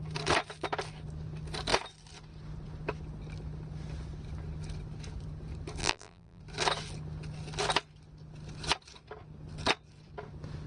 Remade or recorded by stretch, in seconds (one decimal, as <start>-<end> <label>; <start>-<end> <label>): 0.0-5.8 recorded; 5.8-6.4 remade; 6.4-10.7 recorded